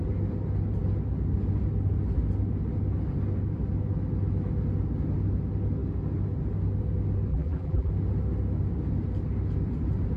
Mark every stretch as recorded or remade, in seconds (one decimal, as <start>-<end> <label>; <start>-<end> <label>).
0.0-7.3 recorded; 7.3-7.9 remade; 7.9-10.2 recorded

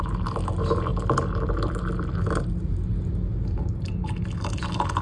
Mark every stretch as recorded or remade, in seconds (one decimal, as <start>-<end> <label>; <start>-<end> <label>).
0.0-5.0 recorded

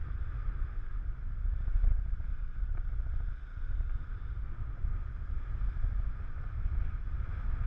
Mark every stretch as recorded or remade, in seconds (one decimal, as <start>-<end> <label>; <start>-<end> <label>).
0.0-7.7 recorded

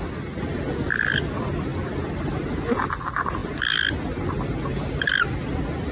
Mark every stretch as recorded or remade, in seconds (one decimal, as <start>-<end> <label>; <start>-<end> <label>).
0.0-5.9 recorded